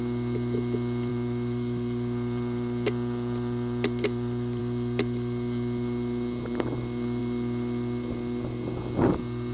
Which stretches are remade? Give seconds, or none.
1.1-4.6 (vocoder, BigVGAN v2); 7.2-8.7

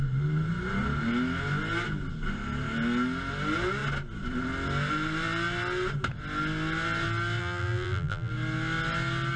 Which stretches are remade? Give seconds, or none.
7.4-8.3 (vocoder, BigVGAN v2)

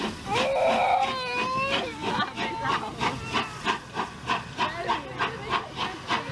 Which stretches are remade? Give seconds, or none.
none

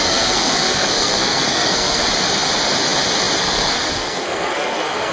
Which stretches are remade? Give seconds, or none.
0.0-2.0 (codec, SNAC); 3.4-5.1

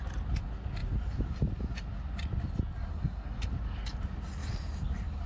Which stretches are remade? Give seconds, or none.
2.9-3.5 (codec, SNAC)

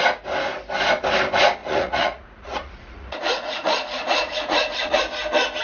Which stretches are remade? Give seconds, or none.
1.6-5.0 (vocoder, Vocos)

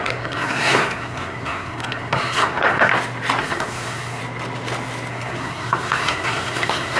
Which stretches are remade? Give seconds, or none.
0.0-2.9 (codec, SNAC); 3.4-4.2; 5.1-7.0

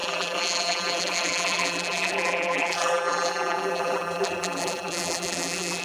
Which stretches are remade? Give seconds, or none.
0.0-5.8 (vocoder, BigVGAN v2)